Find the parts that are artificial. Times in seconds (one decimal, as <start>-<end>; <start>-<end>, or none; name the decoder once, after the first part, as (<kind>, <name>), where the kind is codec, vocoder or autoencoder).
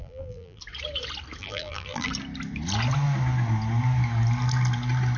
0.0-0.6 (vocoder, BigVGAN v2); 1.4-2.1